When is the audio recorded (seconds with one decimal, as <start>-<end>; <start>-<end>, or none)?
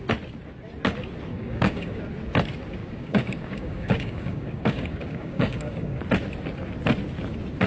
0.0-1.3; 2.0-2.8; 6.0-7.7